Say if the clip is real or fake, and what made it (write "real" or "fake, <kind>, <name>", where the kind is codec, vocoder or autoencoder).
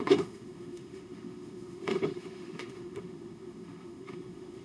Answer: fake, autoencoder, DAC-VAE